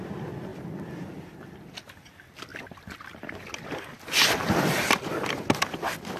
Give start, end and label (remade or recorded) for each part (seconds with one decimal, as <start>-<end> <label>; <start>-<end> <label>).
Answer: 0.0-6.2 recorded